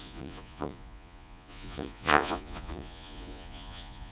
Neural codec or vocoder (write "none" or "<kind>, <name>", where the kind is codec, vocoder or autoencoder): vocoder, Vocos